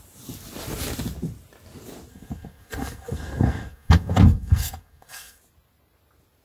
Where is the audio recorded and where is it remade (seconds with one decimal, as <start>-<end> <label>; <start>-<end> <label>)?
0.0-2.1 recorded; 2.1-5.4 remade; 5.4-6.4 recorded